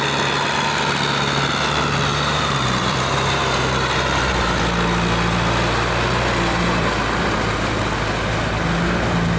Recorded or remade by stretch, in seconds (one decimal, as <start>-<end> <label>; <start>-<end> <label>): 0.0-2.1 recorded; 2.1-4.6 remade; 4.6-9.4 recorded